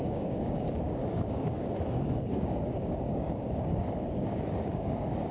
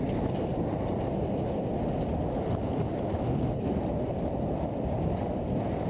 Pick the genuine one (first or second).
second